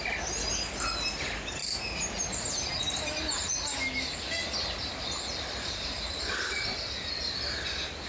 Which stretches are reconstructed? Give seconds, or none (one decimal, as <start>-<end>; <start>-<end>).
none